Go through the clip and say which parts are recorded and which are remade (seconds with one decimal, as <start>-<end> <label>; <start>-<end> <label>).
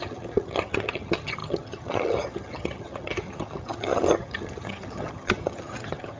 0.0-6.2 remade